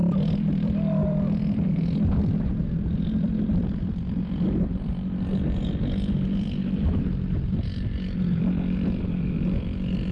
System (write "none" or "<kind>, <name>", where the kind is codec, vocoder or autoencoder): vocoder, BigVGAN v2